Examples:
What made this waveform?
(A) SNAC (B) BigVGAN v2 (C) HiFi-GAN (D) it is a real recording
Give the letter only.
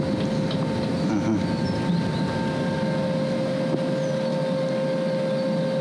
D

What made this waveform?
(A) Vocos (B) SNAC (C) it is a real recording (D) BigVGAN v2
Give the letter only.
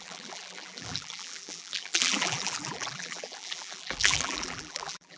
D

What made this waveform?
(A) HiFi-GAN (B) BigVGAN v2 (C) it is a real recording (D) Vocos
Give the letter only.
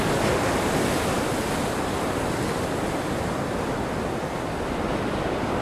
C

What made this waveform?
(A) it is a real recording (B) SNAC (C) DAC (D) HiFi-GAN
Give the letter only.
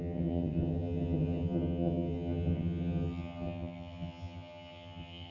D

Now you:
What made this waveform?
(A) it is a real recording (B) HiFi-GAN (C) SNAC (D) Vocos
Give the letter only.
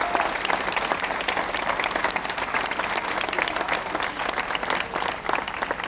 A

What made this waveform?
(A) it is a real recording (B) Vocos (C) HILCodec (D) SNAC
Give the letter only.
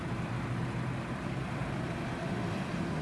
A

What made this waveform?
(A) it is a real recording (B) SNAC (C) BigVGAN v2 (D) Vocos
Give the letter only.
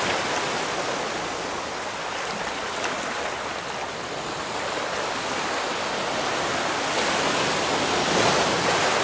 A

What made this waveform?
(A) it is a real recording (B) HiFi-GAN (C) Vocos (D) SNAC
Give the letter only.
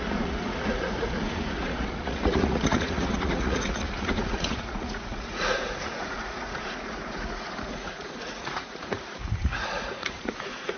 C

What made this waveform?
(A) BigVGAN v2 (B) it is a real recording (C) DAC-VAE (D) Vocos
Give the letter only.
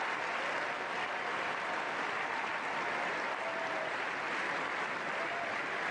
B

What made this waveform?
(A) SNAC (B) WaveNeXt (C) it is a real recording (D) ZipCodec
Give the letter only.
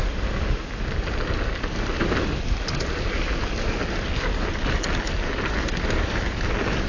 C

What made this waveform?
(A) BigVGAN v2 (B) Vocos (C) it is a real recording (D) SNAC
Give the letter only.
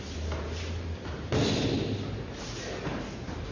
C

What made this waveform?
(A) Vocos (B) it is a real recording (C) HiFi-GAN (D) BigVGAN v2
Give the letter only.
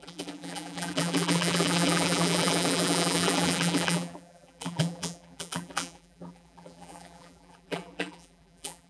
D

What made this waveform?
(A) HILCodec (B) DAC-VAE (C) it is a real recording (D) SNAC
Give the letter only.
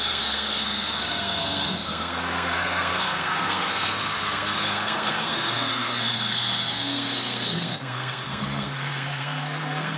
D